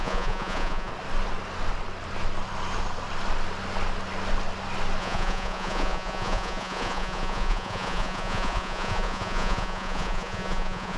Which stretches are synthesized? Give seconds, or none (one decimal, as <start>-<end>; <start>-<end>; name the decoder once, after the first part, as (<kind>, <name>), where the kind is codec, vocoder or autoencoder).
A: 0.0-0.9 (vocoder, Vocos); 5.0-11.0